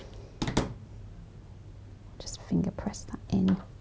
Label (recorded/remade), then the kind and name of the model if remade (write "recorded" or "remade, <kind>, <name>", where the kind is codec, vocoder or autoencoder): recorded